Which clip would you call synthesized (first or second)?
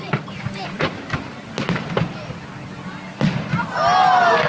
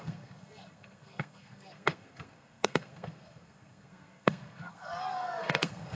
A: second